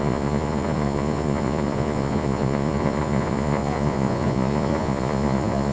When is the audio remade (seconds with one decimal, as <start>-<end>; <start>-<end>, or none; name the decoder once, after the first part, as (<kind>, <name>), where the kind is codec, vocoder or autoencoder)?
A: 0.0-5.7 (vocoder, Vocos)